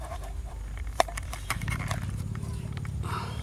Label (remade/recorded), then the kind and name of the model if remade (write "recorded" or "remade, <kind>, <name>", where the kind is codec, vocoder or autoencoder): remade, vocoder, BigVGAN v2